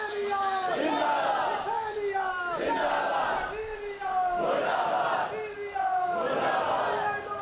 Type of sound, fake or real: real